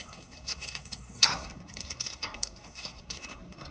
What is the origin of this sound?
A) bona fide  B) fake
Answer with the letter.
B